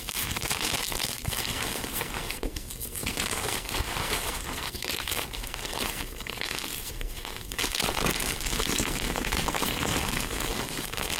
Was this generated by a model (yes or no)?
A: yes